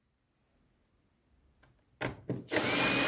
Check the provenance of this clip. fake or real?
real